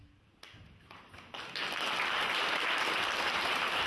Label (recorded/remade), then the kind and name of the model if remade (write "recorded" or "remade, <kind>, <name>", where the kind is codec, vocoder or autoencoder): recorded